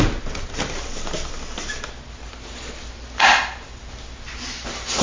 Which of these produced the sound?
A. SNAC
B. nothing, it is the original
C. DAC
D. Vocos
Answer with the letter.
B